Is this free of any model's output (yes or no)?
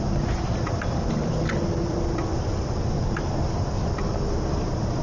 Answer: yes